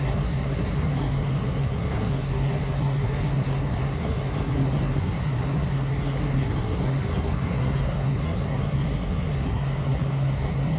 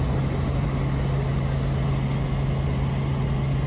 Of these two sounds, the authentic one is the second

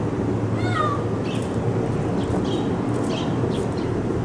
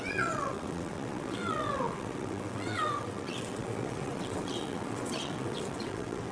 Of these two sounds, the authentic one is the first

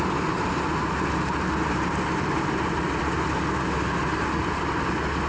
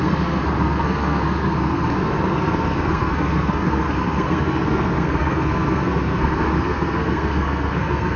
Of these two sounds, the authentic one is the first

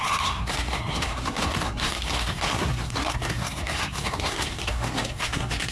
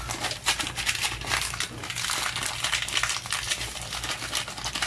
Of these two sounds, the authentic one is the second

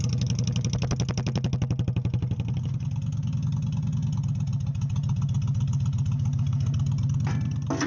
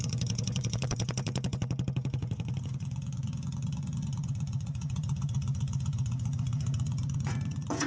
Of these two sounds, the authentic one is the first